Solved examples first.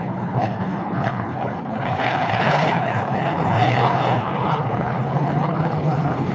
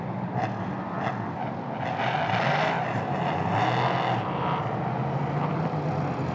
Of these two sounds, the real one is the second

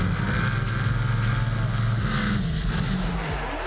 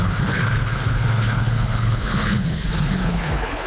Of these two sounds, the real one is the first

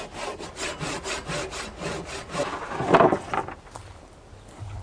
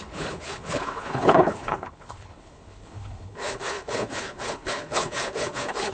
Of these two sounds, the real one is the first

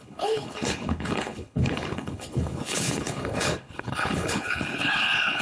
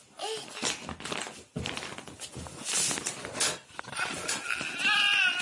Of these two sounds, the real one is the second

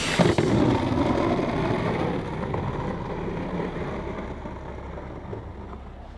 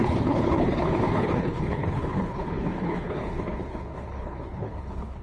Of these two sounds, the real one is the first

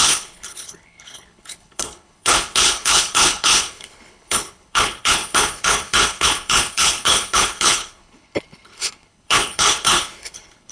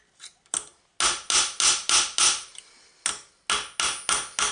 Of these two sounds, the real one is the second